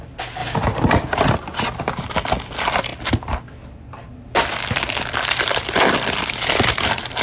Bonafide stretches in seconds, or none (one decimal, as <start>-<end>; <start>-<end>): 0.0-7.2